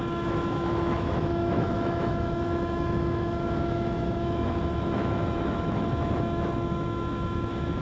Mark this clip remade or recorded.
remade